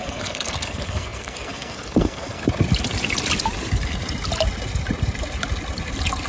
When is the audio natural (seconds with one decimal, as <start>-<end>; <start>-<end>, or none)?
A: 2.4-6.3